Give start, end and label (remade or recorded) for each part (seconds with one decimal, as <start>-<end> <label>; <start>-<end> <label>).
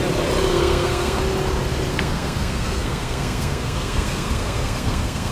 0.0-0.5 recorded; 0.5-1.2 remade; 1.2-1.9 recorded; 1.9-5.3 remade